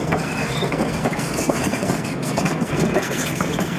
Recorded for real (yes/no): no